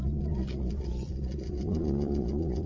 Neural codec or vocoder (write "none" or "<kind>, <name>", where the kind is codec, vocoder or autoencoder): vocoder, Vocos